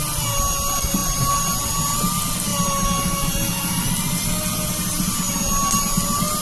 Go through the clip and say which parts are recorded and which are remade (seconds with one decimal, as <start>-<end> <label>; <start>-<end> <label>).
0.0-6.4 recorded